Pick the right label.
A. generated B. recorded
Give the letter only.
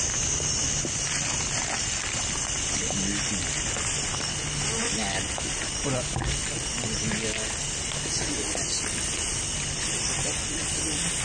B